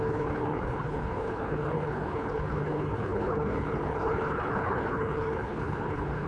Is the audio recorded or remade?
remade